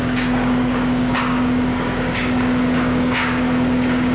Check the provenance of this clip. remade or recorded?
remade